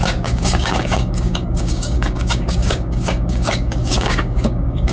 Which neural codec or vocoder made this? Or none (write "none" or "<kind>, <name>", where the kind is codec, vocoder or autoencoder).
codec, DAC